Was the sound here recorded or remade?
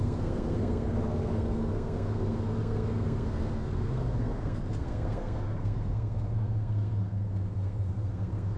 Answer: remade